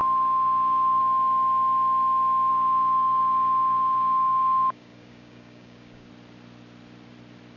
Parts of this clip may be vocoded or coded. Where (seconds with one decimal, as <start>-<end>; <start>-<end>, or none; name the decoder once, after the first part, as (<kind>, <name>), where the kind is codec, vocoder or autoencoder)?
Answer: 0.0-1.0 (codec, DAC); 2.5-6.1